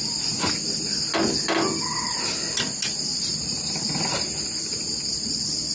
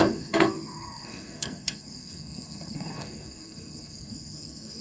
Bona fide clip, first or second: first